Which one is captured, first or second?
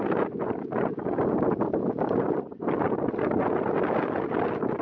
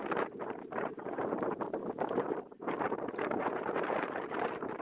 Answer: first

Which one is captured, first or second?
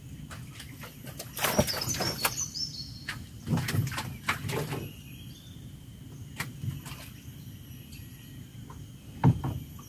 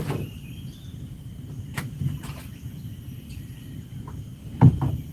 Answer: first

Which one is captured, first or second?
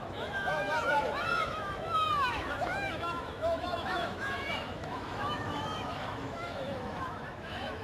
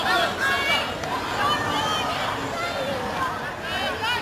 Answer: second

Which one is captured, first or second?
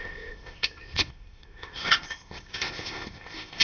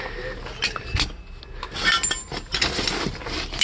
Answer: second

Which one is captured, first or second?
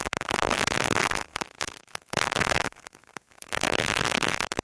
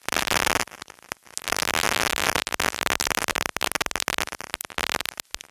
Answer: second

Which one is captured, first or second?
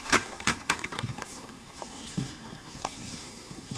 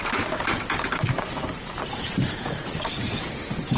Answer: second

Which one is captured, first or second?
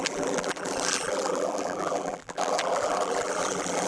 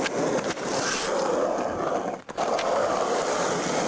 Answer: second